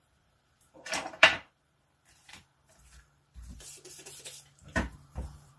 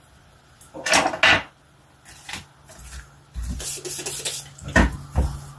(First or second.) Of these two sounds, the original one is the second